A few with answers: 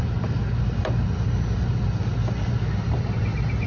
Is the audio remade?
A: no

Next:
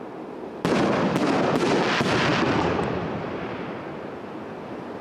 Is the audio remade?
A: no